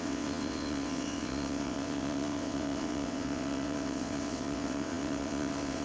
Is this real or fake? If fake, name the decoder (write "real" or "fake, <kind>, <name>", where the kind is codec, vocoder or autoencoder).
fake, vocoder, WaveNeXt